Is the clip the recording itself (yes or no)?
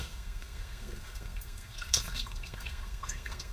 no